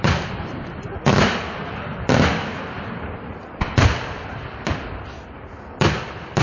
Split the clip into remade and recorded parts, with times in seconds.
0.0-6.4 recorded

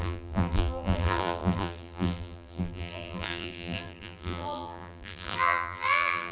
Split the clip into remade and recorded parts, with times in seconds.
0.0-6.3 remade

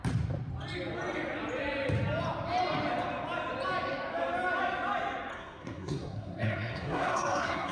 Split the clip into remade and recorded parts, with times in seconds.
0.0-5.3 recorded; 5.3-7.7 remade

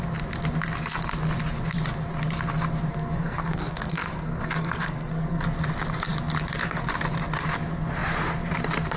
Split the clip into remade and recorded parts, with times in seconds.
0.0-2.9 recorded; 2.9-5.4 remade; 5.4-9.0 recorded

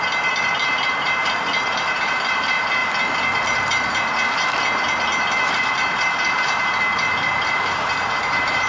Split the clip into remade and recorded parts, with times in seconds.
0.0-2.8 remade; 2.8-5.2 recorded; 5.2-8.7 remade

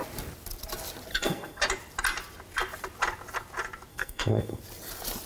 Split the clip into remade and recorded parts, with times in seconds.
0.0-1.1 recorded; 1.1-1.6 remade; 1.6-3.9 recorded; 3.9-4.6 remade; 4.6-5.3 recorded